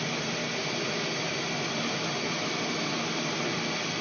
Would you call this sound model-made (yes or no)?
no